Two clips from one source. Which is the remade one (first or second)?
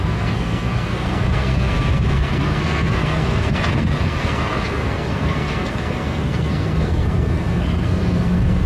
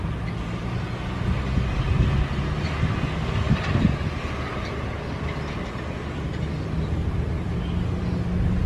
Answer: first